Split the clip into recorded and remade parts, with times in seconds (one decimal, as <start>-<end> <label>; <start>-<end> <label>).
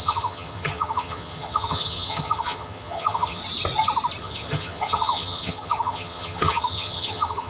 0.0-3.4 remade; 3.4-4.2 recorded; 4.2-7.5 remade